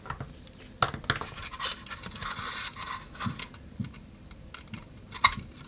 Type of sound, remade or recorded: recorded